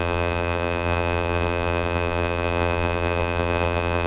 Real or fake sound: fake